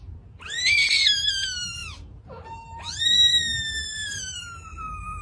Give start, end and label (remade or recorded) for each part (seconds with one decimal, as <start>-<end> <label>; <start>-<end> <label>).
0.0-5.2 recorded